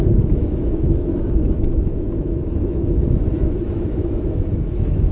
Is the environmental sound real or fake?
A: fake